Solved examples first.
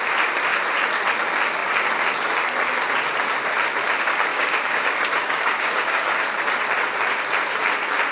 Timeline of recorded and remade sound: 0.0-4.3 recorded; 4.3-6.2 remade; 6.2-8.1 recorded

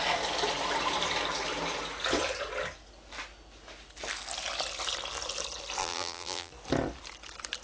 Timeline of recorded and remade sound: 0.0-5.8 recorded; 5.8-6.5 remade; 6.5-7.6 recorded

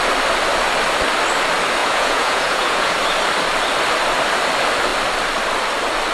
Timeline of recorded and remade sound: 0.0-1.8 recorded; 1.8-3.0 remade; 3.0-6.1 recorded